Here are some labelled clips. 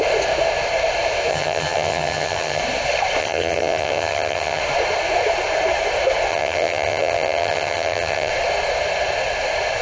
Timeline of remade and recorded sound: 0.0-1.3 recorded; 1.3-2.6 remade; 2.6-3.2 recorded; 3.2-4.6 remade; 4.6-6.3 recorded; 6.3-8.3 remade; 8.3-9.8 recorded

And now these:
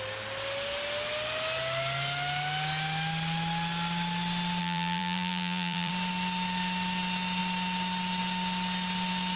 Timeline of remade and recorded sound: 0.0-4.6 recorded; 4.6-5.9 remade; 5.9-9.4 recorded